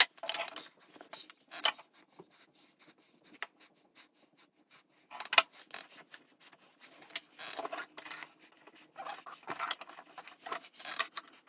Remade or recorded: recorded